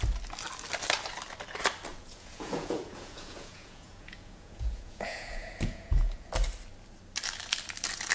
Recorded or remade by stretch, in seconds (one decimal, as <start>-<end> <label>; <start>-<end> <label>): 0.0-1.9 recorded; 1.9-6.3 remade; 6.3-8.1 recorded